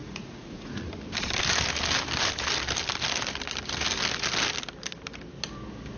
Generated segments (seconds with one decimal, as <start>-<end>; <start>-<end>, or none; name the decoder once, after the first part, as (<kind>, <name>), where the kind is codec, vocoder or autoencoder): 0.0-0.9 (vocoder, Vocos)